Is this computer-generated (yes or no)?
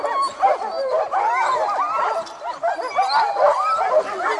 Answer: no